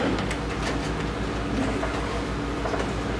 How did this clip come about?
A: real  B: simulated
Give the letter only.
A